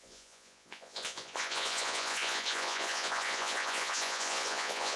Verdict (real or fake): fake